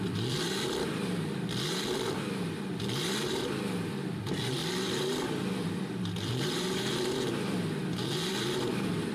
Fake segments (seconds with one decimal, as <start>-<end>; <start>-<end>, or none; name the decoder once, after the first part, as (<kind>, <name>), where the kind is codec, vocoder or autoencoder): 0.0-9.1 (vocoder, BigVGAN v2)